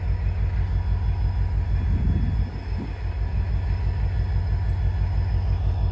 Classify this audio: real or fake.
real